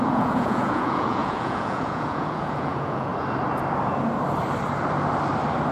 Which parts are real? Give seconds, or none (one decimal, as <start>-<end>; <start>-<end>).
3.1-5.7